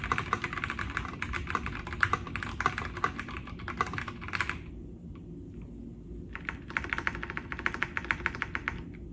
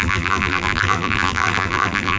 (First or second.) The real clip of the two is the first